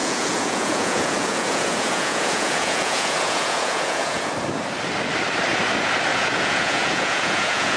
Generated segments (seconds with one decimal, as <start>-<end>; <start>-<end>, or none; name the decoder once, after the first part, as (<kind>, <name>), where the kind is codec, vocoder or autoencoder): 0.0-4.3 (vocoder, Vocos); 6.1-7.8